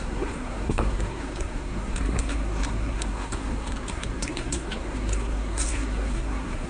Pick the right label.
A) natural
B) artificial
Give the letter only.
B